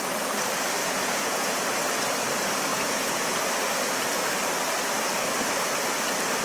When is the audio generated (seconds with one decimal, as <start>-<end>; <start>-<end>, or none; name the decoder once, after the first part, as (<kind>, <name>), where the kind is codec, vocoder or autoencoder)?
0.8-1.5 (vocoder, Vocos); 2.7-3.4